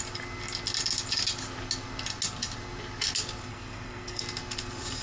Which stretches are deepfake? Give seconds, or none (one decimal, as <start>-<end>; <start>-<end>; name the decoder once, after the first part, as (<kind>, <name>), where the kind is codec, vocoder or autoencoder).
3.5-4.2 (codec, SNAC)